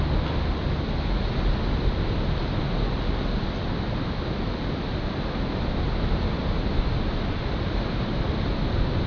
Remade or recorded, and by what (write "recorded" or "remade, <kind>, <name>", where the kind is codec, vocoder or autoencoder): recorded